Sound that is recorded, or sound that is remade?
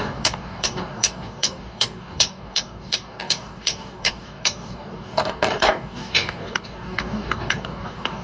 remade